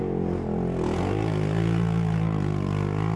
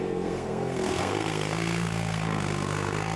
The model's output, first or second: second